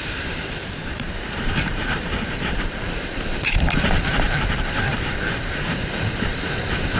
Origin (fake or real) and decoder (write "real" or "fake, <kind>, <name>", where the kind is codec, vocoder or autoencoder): fake, vocoder, BigVGAN v2